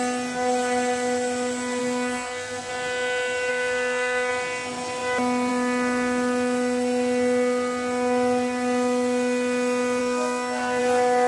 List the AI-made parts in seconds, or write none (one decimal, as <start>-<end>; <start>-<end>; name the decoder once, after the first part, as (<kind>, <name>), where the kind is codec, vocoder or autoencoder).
1.8-2.7 (codec, SNAC); 3.5-4.3; 10.0-10.8